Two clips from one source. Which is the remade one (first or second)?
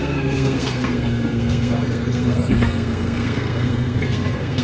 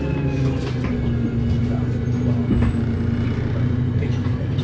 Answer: first